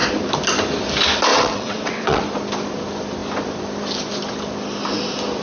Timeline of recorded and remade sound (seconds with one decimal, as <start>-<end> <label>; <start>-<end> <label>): 0.0-1.3 recorded; 1.3-2.2 remade; 2.2-5.4 recorded